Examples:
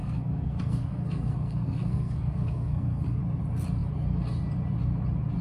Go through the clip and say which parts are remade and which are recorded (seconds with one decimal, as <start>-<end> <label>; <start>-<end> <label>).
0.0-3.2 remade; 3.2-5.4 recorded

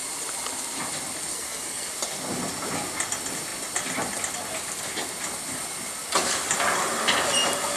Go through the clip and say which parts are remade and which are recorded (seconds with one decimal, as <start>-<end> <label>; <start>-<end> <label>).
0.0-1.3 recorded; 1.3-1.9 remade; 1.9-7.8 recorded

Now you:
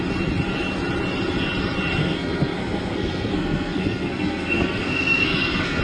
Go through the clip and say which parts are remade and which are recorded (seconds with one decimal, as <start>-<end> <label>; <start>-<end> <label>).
0.0-2.0 recorded; 2.0-5.8 remade

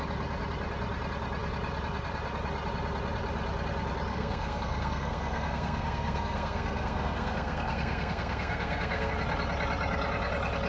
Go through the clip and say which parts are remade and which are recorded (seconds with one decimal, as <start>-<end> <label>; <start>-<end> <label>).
0.0-4.1 recorded; 4.1-9.1 remade; 9.1-10.7 recorded

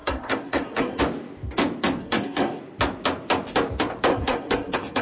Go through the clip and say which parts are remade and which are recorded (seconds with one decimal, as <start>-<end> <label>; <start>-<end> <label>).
0.0-1.0 remade; 1.0-2.0 recorded; 2.0-2.6 remade; 2.6-4.1 recorded; 4.1-5.0 remade

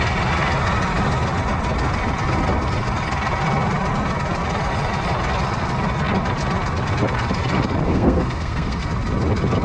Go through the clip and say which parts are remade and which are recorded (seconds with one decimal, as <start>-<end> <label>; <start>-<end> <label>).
0.0-7.9 recorded; 7.9-8.9 remade; 8.9-9.6 recorded